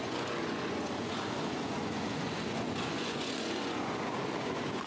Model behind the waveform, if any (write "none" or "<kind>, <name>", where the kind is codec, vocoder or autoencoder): vocoder, Vocos